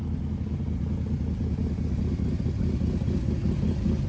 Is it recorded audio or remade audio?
recorded